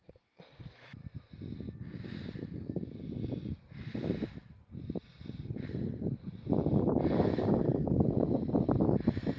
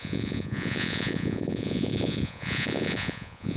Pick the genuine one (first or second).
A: first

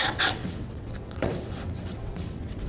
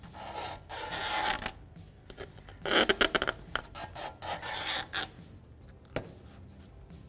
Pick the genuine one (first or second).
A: second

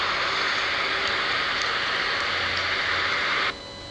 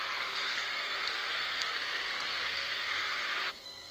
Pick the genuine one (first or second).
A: first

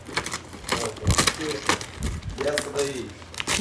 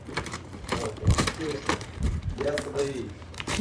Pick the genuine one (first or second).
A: first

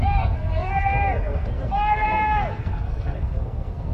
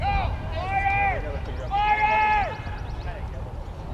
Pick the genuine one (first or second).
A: second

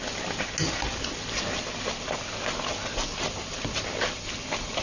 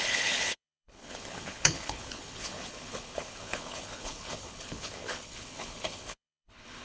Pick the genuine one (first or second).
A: first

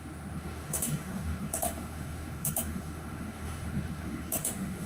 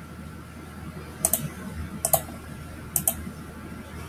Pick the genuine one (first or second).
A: second